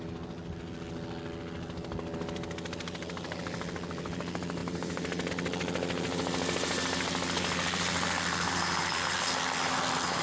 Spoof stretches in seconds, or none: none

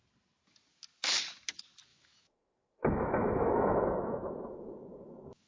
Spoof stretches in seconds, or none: 1.9-5.5 (autoencoder, DAC-VAE)

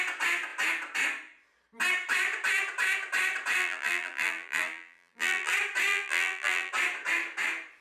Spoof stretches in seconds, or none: 3.6-5.5 (vocoder, BigVGAN v2); 5.9-6.7

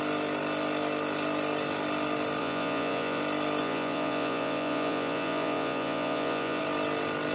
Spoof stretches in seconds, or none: 2.4-3.2 (vocoder, Vocos); 3.6-6.6

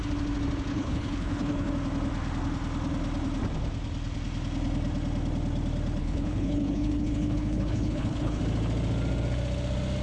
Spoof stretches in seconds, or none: 0.7-1.7 (codec, HILCodec); 6.0-8.4

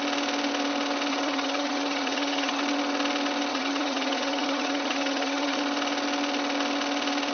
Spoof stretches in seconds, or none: 1.1-2.6 (vocoder, HiFi-GAN); 3.5-5.6

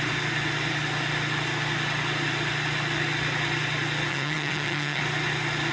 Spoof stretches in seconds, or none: 4.1-5.0 (vocoder, HiFi-GAN)